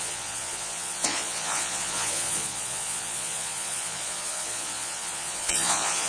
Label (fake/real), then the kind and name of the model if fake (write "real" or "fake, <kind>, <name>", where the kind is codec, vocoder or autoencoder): fake, vocoder, Vocos